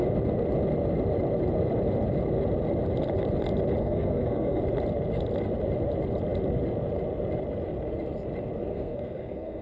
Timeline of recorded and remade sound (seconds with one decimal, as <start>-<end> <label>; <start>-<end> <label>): 0.0-3.8 recorded; 3.8-4.6 remade; 4.6-8.7 recorded; 8.7-9.6 remade